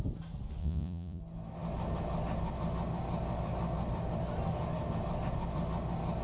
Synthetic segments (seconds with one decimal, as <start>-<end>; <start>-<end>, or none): 0.6-1.2